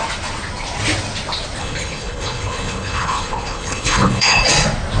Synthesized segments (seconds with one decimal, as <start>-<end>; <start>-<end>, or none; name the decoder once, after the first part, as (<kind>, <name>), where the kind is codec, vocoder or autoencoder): 1.6-4.4 (codec, HILCodec)